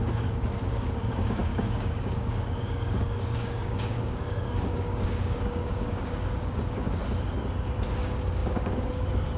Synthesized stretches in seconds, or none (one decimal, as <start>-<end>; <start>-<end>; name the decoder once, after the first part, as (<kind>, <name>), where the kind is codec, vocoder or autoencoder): 0.0-7.0 (codec, DAC); 7.9-9.4